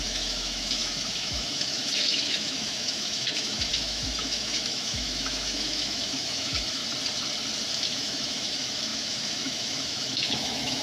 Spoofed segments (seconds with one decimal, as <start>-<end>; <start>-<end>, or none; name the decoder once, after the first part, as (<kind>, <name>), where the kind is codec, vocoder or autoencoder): 0.0-6.8 (autoencoder, DAC-VAE); 7.7-10.8